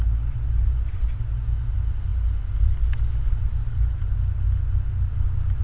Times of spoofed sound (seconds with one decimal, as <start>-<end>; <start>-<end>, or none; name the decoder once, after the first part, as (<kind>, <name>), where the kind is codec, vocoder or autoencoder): none

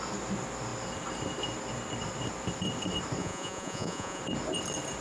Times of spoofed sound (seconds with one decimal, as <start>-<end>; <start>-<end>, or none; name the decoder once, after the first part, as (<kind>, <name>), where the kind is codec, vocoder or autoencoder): 3.2-4.2 (vocoder, Vocos)